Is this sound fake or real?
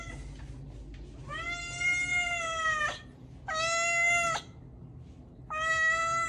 real